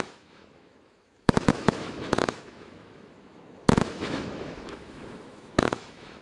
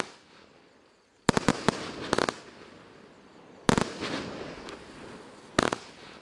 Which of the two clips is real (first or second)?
second